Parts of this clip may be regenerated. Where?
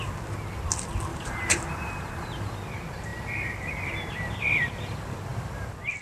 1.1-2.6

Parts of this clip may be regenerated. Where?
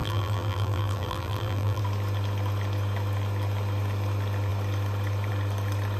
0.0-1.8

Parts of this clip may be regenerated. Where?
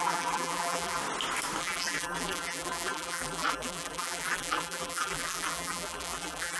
0.0-1.0; 1.6-6.6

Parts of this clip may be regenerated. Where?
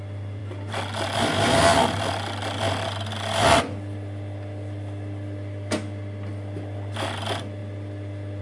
0.4-3.6